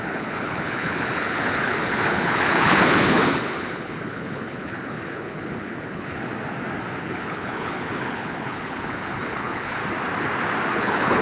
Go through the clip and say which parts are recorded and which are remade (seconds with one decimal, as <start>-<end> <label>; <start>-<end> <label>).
0.0-6.3 remade; 6.3-7.0 recorded; 7.0-9.8 remade; 9.8-10.7 recorded; 10.7-11.2 remade